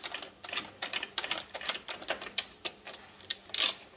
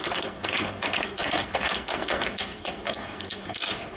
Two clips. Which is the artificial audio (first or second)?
second